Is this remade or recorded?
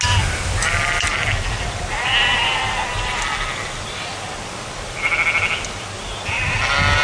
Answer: recorded